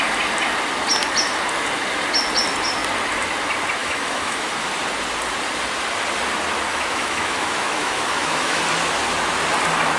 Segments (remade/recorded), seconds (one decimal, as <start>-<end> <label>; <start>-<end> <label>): 0.0-3.8 recorded; 3.8-4.7 remade; 4.7-6.7 recorded; 6.7-8.6 remade; 8.6-10.0 recorded